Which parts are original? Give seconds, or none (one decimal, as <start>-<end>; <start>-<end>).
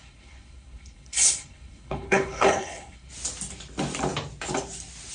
3.1-5.1